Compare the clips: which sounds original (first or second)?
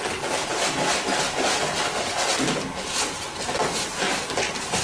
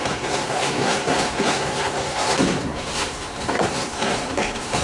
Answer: first